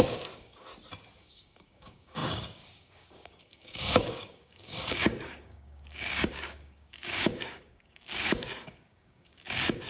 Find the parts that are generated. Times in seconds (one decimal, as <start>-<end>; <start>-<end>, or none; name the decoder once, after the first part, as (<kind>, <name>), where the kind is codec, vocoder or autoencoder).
0.0-0.7 (codec, DAC); 1.2-9.9